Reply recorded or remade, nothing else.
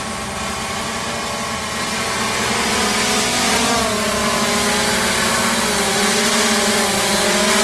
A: recorded